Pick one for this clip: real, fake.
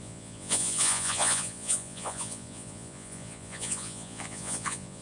fake